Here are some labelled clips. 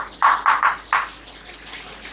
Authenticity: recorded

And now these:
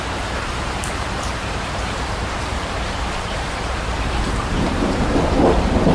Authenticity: remade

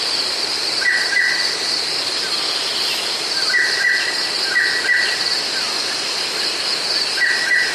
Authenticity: recorded